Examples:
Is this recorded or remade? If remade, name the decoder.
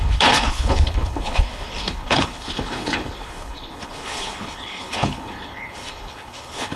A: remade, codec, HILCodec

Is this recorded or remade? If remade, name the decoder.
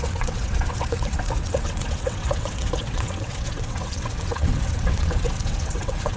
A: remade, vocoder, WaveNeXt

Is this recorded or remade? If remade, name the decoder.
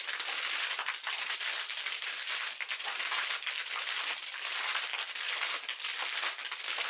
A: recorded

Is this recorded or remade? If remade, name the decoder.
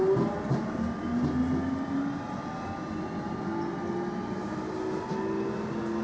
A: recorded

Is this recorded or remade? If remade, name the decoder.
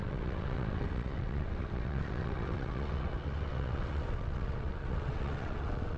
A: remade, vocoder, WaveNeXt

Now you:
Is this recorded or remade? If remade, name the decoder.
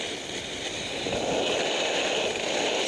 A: recorded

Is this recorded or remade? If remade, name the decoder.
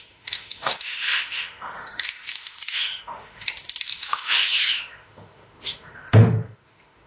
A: remade, autoencoder, DAC-VAE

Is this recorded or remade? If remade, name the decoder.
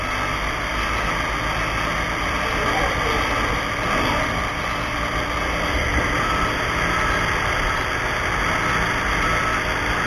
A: recorded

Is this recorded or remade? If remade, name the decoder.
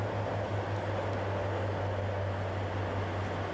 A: recorded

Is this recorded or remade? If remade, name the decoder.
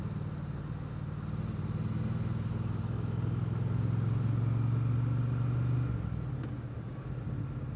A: recorded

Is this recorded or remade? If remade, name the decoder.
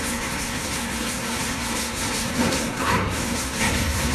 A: remade, codec, SNAC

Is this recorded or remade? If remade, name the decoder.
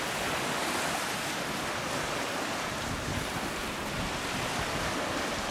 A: remade, vocoder, BigVGAN v2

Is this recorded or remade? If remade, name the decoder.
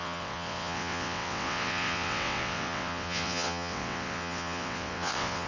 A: remade, vocoder, WaveNeXt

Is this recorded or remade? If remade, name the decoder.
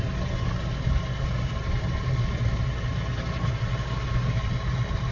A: recorded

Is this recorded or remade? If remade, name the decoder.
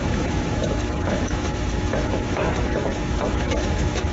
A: remade, autoencoder, DAC-VAE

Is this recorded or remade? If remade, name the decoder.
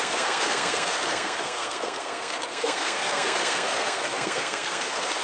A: remade, codec, SNAC